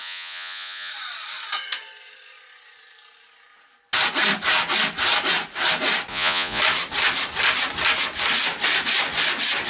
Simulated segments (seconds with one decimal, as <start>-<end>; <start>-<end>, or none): 0.0-0.9; 6.1-6.6